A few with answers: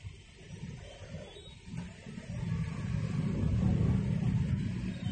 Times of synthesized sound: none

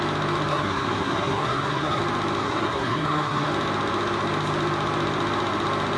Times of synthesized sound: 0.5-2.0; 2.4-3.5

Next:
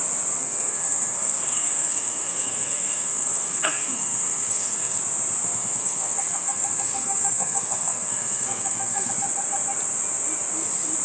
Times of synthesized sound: 0.4-5.0; 5.4-9.1

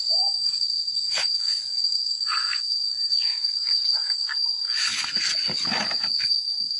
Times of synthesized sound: 0.0-5.3; 6.2-6.8